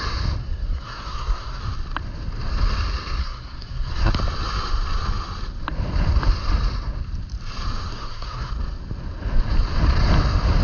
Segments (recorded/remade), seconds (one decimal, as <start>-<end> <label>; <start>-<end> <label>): 0.0-0.4 recorded; 0.4-1.6 remade; 1.6-3.2 recorded; 3.2-4.1 remade; 4.1-7.9 recorded; 7.9-8.5 remade; 8.5-10.6 recorded